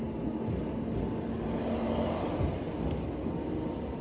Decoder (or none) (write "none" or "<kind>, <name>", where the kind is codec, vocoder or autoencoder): none